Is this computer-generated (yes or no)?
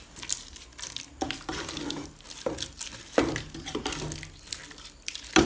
no